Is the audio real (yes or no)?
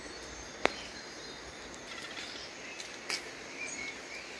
yes